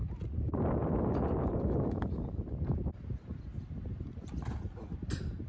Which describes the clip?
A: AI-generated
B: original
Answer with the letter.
B